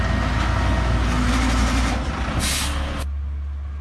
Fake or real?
real